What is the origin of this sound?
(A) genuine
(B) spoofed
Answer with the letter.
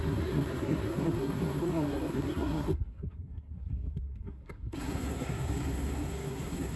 B